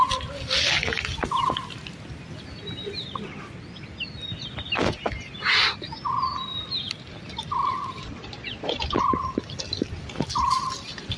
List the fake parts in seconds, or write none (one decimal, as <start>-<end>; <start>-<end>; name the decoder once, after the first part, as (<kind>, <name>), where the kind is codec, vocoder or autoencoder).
8.0-8.8 (vocoder, Vocos)